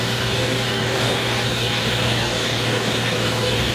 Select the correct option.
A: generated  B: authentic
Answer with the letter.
A